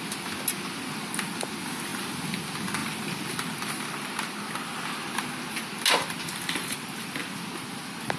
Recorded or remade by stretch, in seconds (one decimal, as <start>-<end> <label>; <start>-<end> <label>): 0.0-2.8 recorded; 2.8-3.7 remade; 3.7-6.0 recorded; 6.0-7.2 remade; 7.2-8.2 recorded